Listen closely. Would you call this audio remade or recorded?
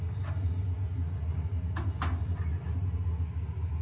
recorded